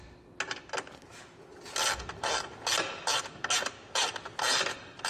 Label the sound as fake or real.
real